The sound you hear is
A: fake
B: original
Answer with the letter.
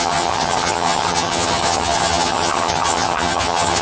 A